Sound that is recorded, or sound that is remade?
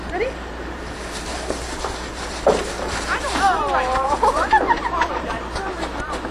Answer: remade